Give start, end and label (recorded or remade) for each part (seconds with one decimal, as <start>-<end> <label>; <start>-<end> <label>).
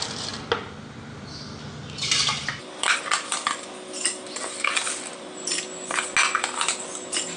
0.0-7.4 recorded